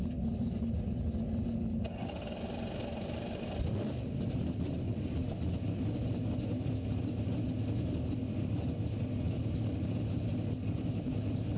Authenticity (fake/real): real